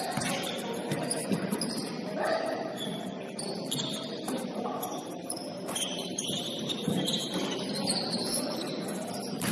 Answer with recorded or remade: remade